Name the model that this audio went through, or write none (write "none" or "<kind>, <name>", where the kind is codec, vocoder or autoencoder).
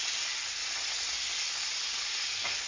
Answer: none